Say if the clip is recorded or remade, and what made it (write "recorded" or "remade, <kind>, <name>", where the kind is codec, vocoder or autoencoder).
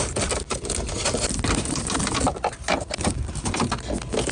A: recorded